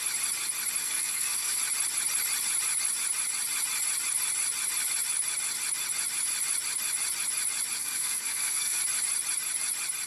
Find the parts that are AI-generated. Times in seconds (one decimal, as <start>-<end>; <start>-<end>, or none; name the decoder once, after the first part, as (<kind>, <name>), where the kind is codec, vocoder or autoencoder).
0.8-1.6 (codec, SNAC); 7.8-8.8